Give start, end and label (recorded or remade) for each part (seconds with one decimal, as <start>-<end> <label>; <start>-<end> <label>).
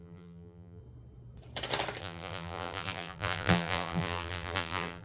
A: 0.0-0.8 remade; 0.8-2.0 recorded; 2.0-5.0 remade